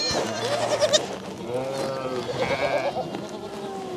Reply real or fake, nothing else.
real